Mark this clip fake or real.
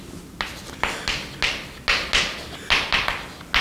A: real